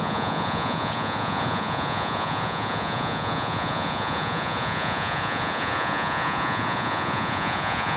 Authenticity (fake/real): fake